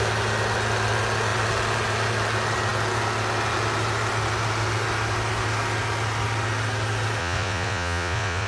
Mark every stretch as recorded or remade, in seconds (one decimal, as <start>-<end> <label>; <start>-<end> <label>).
0.0-7.2 recorded; 7.2-8.5 remade